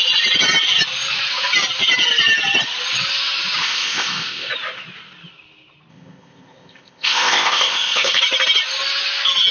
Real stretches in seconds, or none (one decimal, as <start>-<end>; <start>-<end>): 0.0-3.6; 4.5-5.9; 8.2-9.5